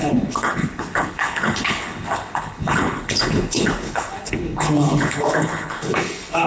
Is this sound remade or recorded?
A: remade